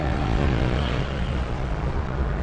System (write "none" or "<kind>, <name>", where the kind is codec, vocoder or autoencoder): vocoder, Vocos